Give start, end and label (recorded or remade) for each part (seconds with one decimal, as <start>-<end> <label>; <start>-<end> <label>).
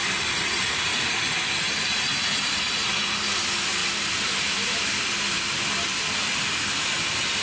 0.0-1.2 remade; 1.2-3.8 recorded; 3.8-4.5 remade; 4.5-7.4 recorded